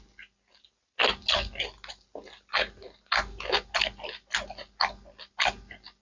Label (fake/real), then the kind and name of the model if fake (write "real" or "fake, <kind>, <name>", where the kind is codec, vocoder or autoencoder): real